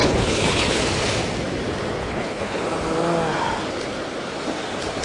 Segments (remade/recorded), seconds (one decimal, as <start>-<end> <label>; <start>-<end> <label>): 0.0-0.8 remade; 0.8-2.0 recorded; 2.0-2.6 remade; 2.6-5.0 recorded